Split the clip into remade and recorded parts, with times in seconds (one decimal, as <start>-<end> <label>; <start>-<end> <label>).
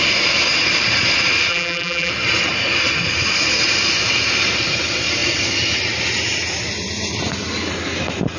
0.0-1.5 recorded; 1.5-2.1 remade; 2.1-8.4 recorded